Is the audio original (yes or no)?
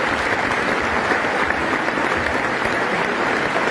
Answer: no